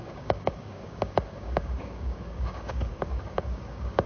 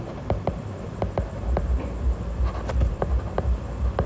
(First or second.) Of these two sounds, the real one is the second